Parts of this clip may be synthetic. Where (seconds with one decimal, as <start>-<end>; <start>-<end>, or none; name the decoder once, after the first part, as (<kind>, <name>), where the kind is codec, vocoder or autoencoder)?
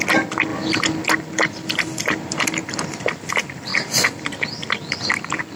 0.0-0.5 (vocoder, BigVGAN v2); 1.1-3.7